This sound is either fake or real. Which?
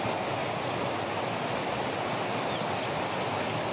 real